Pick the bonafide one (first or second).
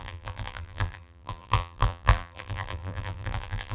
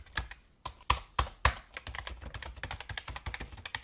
second